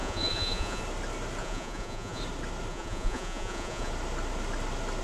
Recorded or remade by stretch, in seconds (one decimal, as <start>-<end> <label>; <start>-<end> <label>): 0.0-0.8 remade; 0.8-1.4 recorded; 1.4-2.2 remade; 2.2-2.7 recorded; 2.7-3.9 remade; 3.9-5.0 recorded